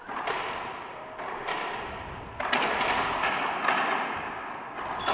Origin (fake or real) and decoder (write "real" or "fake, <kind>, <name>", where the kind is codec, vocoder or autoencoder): real